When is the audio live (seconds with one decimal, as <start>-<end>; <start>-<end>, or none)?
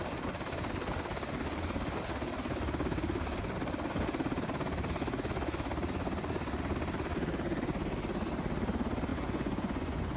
0.0-9.1